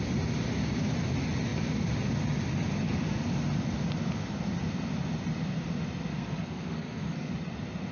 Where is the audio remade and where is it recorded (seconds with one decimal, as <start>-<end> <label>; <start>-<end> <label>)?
0.0-6.1 recorded; 6.1-7.3 remade; 7.3-7.9 recorded